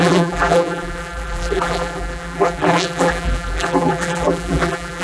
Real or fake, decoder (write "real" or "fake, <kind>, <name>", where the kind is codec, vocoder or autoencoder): fake, vocoder, BigVGAN v2